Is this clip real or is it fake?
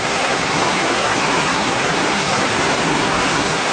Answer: fake